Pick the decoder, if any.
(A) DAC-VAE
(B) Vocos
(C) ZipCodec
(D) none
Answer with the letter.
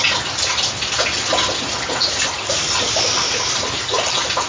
D